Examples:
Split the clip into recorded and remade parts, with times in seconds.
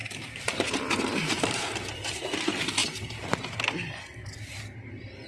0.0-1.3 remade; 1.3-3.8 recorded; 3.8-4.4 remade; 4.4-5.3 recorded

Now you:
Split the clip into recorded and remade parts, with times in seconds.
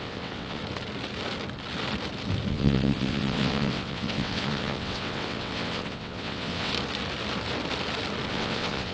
0.0-0.6 remade; 0.6-2.5 recorded; 2.5-6.7 remade; 6.7-8.3 recorded; 8.3-8.9 remade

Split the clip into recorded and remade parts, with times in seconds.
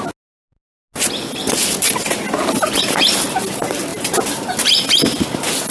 0.0-5.7 recorded